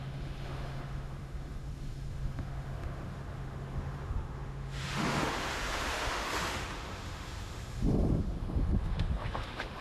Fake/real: fake